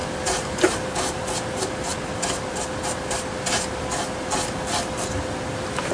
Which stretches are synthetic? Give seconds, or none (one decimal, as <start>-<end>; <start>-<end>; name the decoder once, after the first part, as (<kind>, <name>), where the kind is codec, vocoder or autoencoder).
none